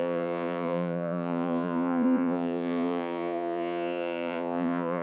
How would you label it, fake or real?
fake